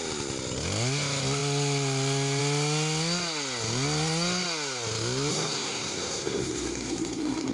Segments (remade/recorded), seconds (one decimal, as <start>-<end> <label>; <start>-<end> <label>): 0.0-5.3 recorded; 5.3-7.5 remade